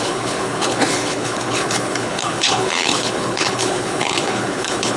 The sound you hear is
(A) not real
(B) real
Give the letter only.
A